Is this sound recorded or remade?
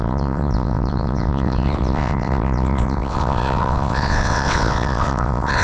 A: remade